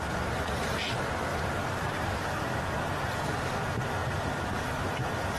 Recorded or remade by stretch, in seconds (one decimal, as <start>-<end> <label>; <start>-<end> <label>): 0.0-5.4 recorded